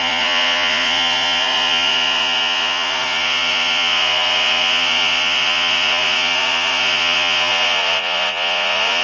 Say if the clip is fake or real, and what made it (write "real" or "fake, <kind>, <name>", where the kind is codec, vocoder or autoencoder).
fake, vocoder, Vocos